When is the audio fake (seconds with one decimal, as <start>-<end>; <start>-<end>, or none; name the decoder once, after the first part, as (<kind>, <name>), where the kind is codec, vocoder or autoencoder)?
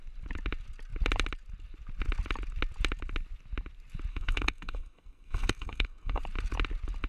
4.1-6.2 (codec, SNAC)